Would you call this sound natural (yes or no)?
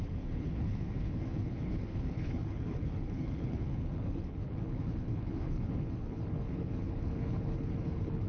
no